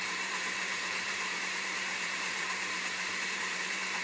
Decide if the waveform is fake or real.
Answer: fake